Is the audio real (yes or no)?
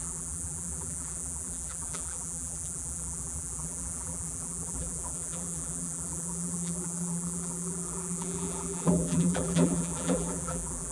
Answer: no